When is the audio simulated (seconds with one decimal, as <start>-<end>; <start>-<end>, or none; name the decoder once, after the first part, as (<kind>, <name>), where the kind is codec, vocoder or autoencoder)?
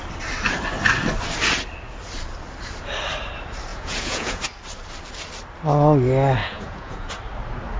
3.7-4.4 (vocoder, Vocos); 6.4-7.1